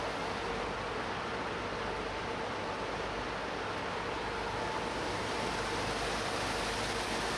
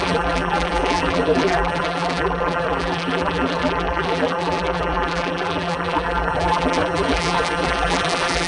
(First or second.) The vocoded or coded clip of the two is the second